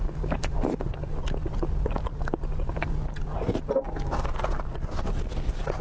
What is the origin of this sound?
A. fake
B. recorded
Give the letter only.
B